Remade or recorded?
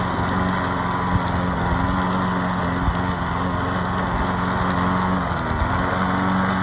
recorded